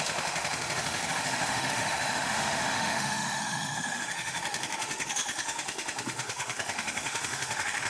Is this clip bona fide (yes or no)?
no